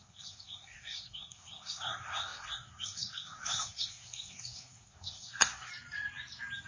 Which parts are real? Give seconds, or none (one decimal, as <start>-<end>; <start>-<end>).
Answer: 5.7-6.7